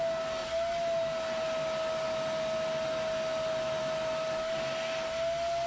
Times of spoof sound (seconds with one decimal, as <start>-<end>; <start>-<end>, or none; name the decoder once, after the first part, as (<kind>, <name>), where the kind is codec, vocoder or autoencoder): none